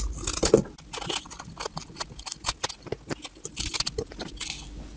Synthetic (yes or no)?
no